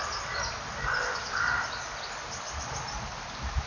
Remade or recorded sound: recorded